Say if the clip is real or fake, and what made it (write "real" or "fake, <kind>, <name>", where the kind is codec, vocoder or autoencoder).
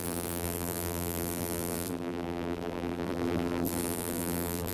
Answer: fake, vocoder, BigVGAN v2